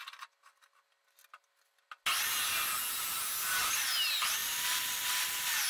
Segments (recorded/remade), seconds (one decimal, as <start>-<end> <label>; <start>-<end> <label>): 0.0-4.4 recorded; 4.4-5.0 remade; 5.0-5.7 recorded